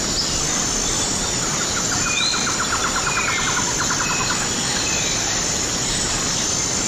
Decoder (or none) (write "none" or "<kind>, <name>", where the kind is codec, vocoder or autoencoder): none